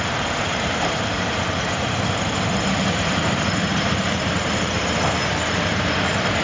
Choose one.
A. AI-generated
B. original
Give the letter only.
A